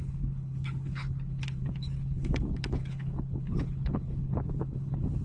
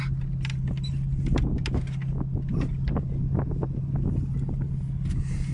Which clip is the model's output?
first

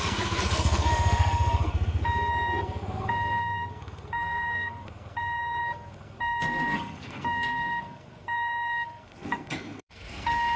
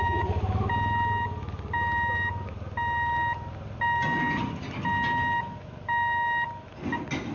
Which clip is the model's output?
first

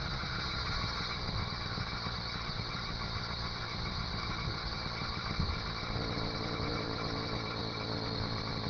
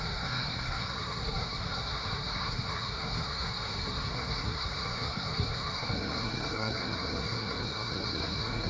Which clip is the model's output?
second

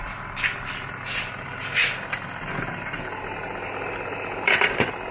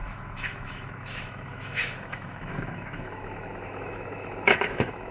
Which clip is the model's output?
second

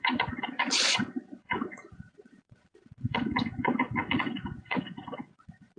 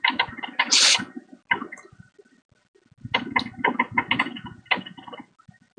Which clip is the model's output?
first